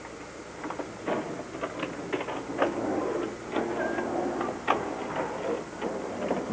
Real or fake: real